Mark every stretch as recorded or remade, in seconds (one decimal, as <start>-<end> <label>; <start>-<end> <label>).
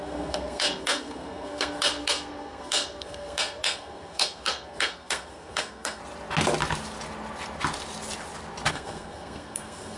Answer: 0.0-6.0 remade; 6.0-8.7 recorded; 8.7-10.0 remade